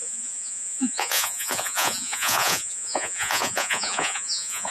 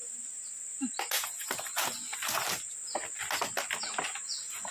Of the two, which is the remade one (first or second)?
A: first